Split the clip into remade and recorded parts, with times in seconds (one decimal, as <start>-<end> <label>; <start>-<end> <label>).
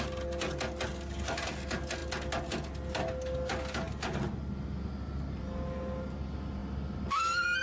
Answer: 0.0-7.6 recorded